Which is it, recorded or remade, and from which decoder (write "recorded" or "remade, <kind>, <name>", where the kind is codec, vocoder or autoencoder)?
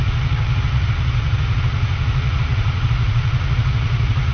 remade, vocoder, Vocos